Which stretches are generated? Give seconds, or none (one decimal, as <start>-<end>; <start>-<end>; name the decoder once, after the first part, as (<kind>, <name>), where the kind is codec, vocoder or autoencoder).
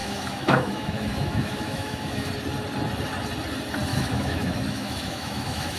0.0-2.3 (autoencoder, DAC-VAE); 3.9-5.8